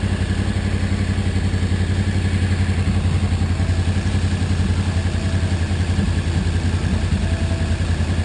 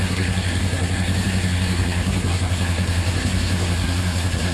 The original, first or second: first